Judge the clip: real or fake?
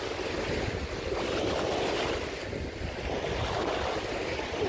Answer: real